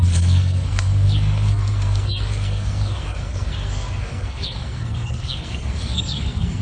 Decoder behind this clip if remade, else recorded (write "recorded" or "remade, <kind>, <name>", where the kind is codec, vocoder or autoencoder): remade, codec, SNAC